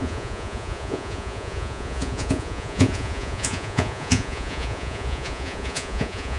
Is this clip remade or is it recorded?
remade